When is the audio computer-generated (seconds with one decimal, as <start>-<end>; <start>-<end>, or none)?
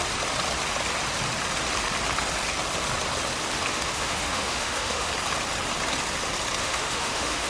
3.7-5.1; 6.6-7.5